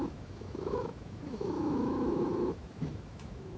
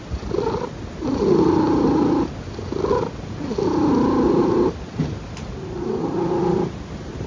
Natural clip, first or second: second